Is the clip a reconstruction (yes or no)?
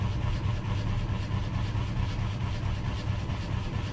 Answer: no